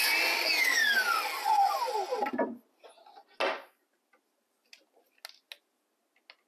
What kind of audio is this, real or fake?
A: real